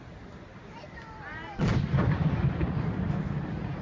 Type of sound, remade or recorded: recorded